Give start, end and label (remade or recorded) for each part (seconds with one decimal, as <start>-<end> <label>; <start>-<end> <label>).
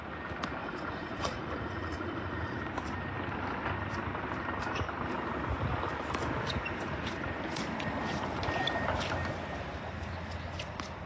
0.0-0.6 recorded; 0.6-2.6 remade; 2.6-11.1 recorded